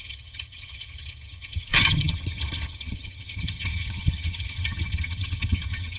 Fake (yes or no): yes